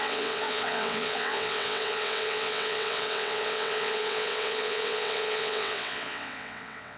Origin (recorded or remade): remade